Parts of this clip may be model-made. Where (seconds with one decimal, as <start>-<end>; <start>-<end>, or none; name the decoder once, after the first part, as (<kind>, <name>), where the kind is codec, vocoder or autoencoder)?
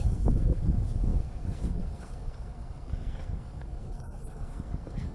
0.0-5.1 (codec, SNAC)